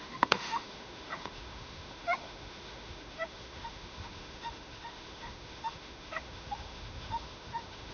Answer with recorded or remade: remade